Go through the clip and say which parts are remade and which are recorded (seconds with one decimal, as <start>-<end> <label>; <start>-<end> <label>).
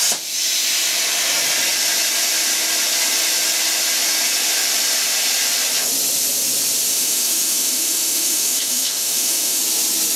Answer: 0.0-6.9 recorded; 6.9-9.6 remade; 9.6-10.2 recorded